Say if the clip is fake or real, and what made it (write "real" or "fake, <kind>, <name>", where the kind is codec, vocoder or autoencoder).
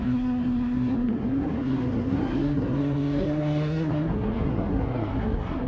fake, codec, SNAC